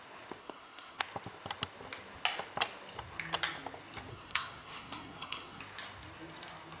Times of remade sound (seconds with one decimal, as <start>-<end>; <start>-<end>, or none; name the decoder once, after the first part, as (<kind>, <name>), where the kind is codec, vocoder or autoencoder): 0.4-1.0 (codec, SNAC); 4.1-5.6

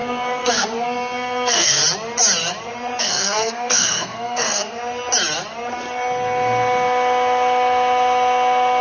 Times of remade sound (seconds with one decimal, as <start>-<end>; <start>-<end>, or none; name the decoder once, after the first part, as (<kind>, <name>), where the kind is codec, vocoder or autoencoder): 0.0-1.8 (codec, SNAC); 3.0-4.8

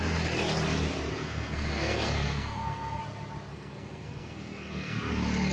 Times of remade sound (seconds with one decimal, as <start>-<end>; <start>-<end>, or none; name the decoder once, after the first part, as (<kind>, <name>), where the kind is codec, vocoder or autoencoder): 1.1-3.0 (codec, SNAC); 3.5-5.1